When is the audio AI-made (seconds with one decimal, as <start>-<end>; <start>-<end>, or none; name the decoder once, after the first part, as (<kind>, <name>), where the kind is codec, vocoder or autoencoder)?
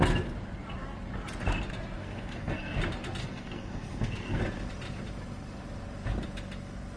2.0-2.8 (codec, SNAC); 3.2-4.4